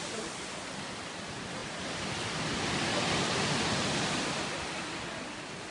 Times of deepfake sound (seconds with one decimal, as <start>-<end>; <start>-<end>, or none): none